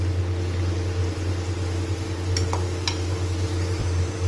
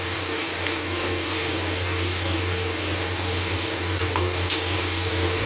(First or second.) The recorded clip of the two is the first